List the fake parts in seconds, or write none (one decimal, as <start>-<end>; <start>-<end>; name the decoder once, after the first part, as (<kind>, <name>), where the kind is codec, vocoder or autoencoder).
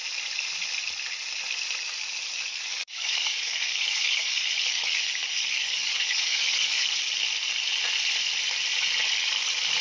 2.5-6.9 (codec, DAC)